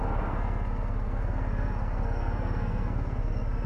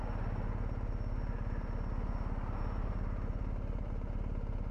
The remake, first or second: first